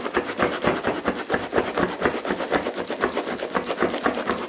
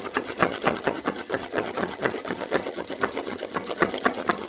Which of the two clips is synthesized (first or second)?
second